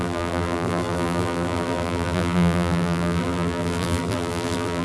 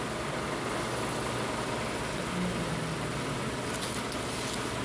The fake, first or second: first